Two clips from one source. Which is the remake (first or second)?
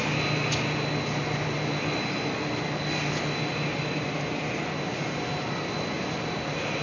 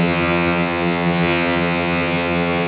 second